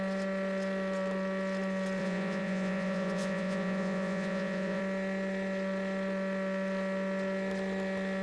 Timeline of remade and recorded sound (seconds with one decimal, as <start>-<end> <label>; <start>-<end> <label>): 0.0-2.0 recorded; 2.0-4.8 remade; 4.8-8.2 recorded